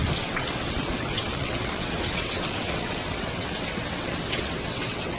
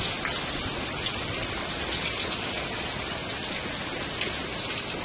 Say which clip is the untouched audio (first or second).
second